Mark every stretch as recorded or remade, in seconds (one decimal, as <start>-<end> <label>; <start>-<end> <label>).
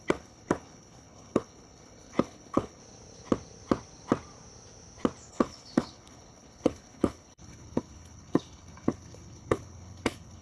0.0-2.8 remade; 2.8-5.3 recorded; 5.3-10.4 remade